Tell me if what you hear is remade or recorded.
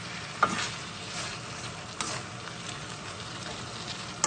recorded